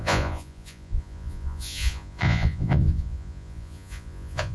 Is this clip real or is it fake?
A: fake